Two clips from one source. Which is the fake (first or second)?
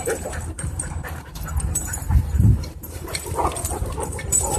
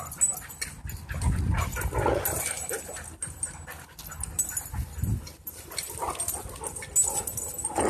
first